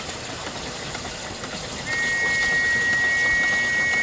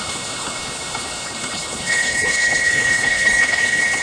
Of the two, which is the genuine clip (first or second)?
first